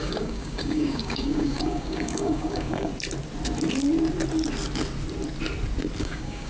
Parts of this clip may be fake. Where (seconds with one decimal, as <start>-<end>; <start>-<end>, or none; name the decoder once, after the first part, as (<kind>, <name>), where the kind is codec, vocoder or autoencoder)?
0.0-2.9 (codec, DAC); 6.0-6.5